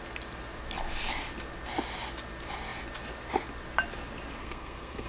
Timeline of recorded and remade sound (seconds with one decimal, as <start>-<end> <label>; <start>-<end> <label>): 0.0-4.4 recorded; 4.4-5.1 remade